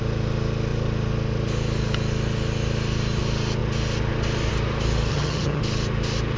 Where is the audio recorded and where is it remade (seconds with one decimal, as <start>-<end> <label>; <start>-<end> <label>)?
0.0-5.1 recorded; 5.1-5.6 remade; 5.6-6.4 recorded

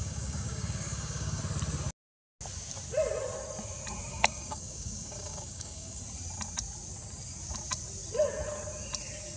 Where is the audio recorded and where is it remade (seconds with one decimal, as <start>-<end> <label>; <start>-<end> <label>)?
0.0-1.4 remade; 1.4-4.1 recorded; 4.1-6.0 remade; 6.0-9.4 recorded

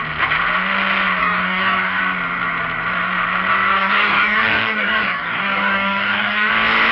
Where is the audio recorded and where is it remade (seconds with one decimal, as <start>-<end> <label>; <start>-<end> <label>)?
0.0-1.2 recorded; 1.2-2.0 remade; 2.0-3.7 recorded; 3.7-6.5 remade; 6.5-6.9 recorded

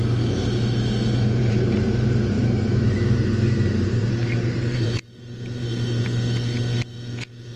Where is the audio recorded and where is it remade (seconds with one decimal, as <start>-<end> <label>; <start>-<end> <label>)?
0.0-1.4 recorded; 1.4-6.0 remade; 6.0-7.6 recorded

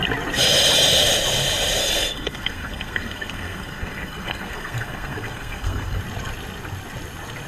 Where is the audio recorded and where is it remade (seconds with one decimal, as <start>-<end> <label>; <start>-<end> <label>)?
0.0-1.8 recorded; 1.8-6.0 remade; 6.0-7.5 recorded

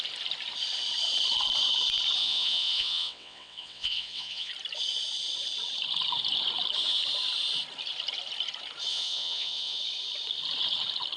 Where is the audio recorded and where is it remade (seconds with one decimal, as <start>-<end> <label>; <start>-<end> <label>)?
0.0-2.2 recorded; 2.2-4.5 remade; 4.5-8.9 recorded; 8.9-9.8 remade; 9.8-11.2 recorded